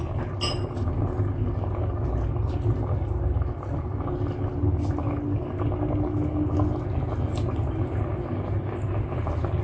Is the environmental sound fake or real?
real